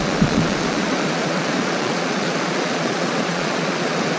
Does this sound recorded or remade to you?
remade